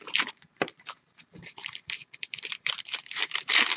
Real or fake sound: fake